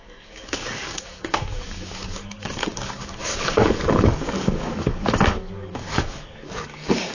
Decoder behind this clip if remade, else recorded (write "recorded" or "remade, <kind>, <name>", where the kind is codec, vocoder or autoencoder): remade, codec, DAC